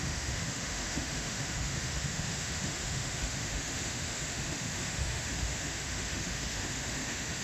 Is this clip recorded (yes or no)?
no